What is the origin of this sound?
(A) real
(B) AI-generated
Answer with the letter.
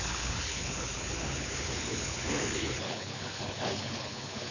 B